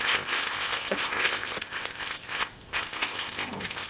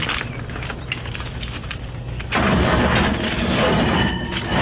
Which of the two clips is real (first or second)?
second